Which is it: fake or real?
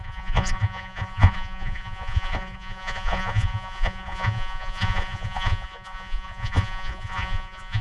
fake